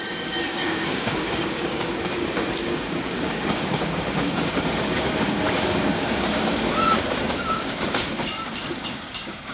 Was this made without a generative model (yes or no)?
no